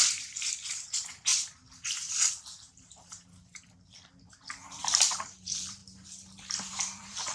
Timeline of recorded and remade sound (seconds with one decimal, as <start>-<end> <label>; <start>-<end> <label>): 0.0-1.3 remade; 1.3-4.6 recorded; 4.6-5.8 remade; 5.8-6.7 recorded; 6.7-7.3 remade